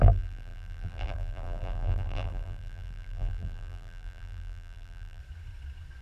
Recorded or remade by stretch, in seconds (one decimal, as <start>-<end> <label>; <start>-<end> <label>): 0.0-5.2 remade; 5.2-6.0 recorded